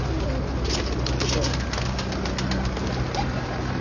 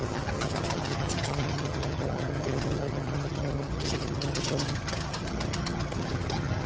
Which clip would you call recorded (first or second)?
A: first